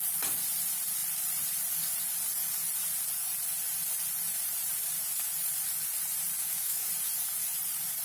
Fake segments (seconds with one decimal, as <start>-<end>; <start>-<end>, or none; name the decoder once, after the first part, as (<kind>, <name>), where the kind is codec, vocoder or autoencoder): 6.4-6.9 (autoencoder, DAC-VAE)